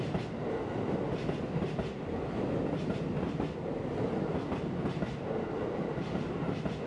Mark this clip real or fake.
real